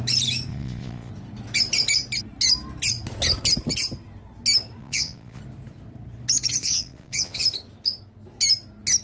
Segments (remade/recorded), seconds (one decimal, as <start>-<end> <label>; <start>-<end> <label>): 0.0-0.5 recorded; 0.5-1.1 remade; 1.1-4.8 recorded; 4.8-5.4 remade; 5.4-6.6 recorded; 6.6-7.4 remade; 7.4-9.0 recorded